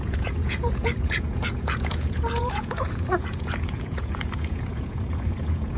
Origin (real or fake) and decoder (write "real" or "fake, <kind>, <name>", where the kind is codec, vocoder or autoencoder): fake, vocoder, Vocos